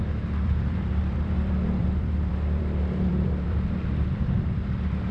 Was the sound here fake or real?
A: fake